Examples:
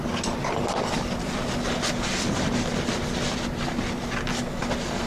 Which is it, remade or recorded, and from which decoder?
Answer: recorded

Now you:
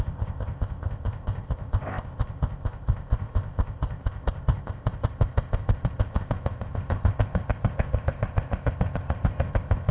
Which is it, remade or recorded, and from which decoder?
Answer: remade, codec, ZipCodec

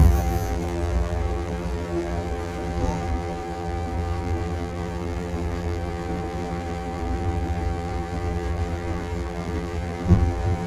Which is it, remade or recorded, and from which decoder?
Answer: remade, vocoder, BigVGAN v2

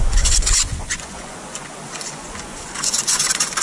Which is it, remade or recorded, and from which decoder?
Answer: remade, vocoder, Vocos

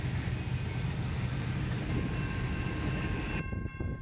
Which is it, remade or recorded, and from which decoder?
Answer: recorded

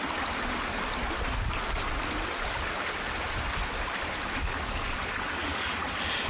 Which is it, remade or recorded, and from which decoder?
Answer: recorded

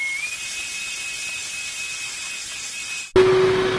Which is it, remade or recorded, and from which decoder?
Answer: recorded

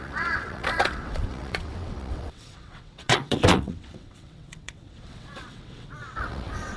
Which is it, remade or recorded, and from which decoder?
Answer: remade, vocoder, WaveNeXt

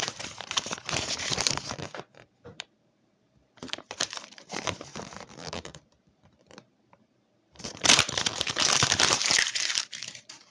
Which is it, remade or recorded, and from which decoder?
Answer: remade, vocoder, BigVGAN v2